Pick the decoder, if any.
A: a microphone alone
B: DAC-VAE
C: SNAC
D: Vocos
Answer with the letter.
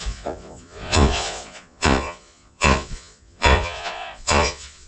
D